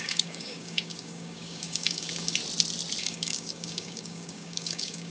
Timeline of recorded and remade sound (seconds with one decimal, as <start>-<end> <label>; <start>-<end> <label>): 0.0-2.4 remade; 2.4-3.0 recorded; 3.0-5.1 remade